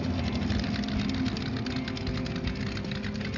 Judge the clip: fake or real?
real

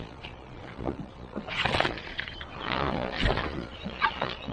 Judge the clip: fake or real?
fake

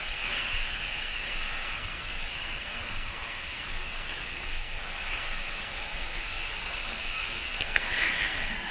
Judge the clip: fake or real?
fake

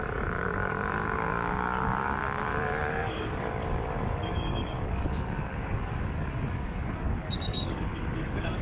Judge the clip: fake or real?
fake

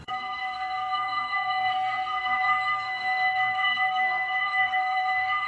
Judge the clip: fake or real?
fake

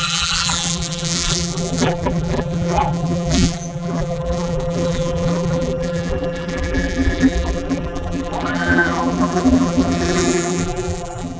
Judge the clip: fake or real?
fake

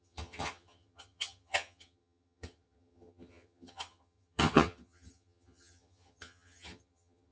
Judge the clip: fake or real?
fake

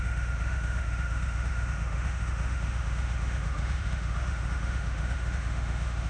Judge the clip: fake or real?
fake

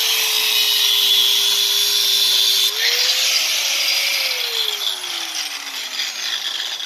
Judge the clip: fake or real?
real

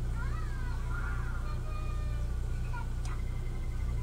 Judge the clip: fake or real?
real